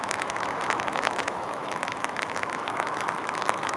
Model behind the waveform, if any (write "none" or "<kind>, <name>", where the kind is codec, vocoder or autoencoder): autoencoder, DAC-VAE